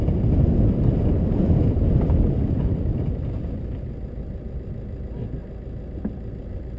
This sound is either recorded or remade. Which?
recorded